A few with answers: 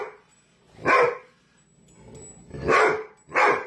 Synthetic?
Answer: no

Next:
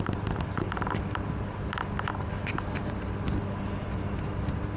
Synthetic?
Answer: no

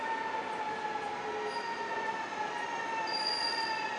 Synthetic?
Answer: no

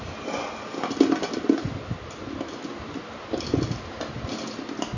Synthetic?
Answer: no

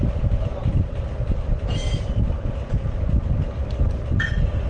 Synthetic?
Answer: no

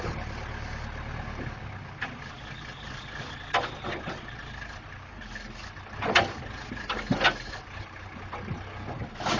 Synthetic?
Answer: no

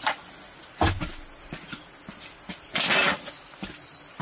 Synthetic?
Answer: no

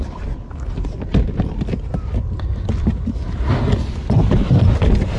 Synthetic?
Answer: no